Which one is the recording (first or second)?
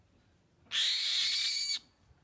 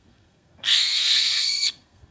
first